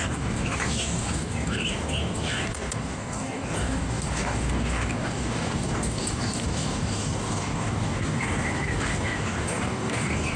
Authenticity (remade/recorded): remade